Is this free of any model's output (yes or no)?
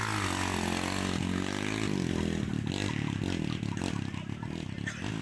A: yes